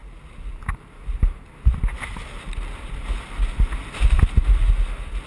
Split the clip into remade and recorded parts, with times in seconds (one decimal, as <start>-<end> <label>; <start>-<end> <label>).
0.0-5.3 recorded